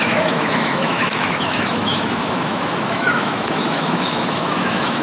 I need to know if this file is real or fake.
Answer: fake